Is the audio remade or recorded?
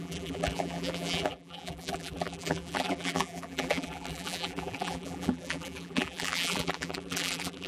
remade